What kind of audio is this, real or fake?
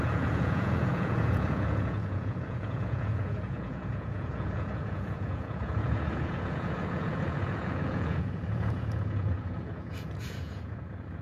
fake